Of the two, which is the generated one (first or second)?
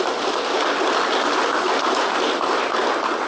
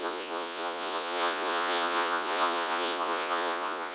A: second